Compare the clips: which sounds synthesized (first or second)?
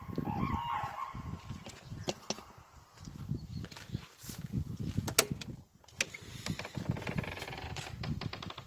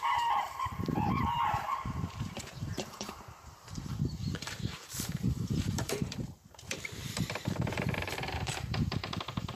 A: second